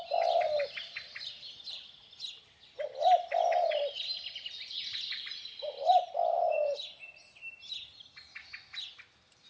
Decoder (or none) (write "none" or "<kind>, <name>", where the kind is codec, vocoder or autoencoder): none